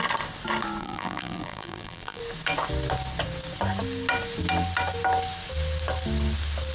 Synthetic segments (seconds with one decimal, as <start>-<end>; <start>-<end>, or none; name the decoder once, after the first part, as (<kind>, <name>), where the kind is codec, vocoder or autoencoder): 0.8-2.2 (vocoder, BigVGAN v2)